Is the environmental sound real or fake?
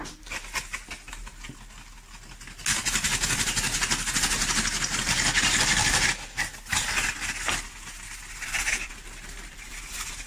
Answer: real